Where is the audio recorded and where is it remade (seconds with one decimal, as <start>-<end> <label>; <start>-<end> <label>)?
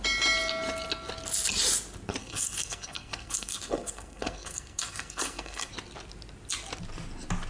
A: 0.0-2.2 recorded; 2.2-5.7 remade; 5.7-7.5 recorded